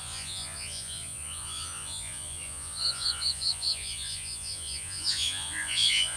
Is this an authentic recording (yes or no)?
no